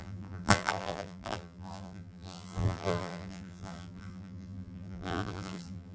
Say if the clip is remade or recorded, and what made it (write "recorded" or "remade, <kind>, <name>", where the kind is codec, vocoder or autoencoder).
remade, vocoder, BigVGAN v2